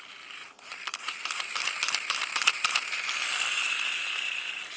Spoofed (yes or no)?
no